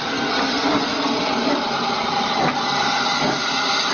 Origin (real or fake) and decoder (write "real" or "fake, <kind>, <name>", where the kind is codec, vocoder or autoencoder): real